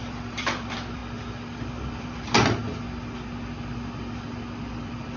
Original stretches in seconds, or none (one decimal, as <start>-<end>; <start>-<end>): 1.0-1.9; 2.6-4.7